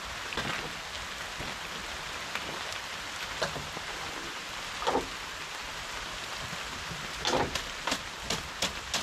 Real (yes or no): yes